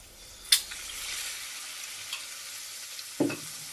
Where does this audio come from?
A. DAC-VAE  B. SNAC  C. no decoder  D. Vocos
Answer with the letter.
C